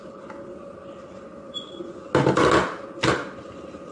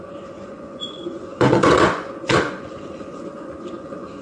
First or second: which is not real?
second